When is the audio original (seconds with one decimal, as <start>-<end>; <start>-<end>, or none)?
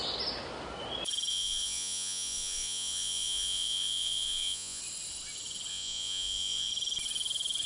0.0-1.3; 4.8-5.7; 6.7-7.7